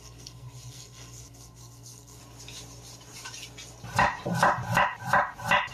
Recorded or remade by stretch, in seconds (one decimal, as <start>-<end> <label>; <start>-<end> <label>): 0.0-2.2 remade; 2.2-5.7 recorded

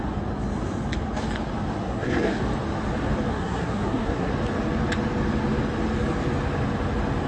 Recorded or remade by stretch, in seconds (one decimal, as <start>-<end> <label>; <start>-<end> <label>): 0.0-1.8 recorded; 1.8-2.4 remade; 2.4-3.3 recorded; 3.3-4.3 remade; 4.3-7.3 recorded